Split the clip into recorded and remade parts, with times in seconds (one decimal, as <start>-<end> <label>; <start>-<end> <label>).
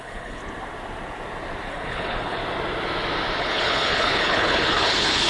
0.0-0.4 remade; 0.4-1.7 recorded; 1.7-2.4 remade; 2.4-3.4 recorded; 3.4-5.3 remade